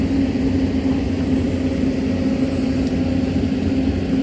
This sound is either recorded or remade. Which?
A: recorded